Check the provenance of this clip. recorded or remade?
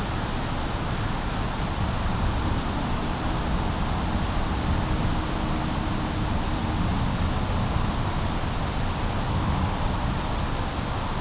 recorded